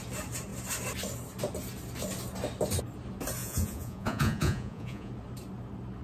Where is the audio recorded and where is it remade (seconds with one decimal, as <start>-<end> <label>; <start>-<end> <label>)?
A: 0.0-3.4 recorded; 3.4-5.1 remade; 5.1-6.0 recorded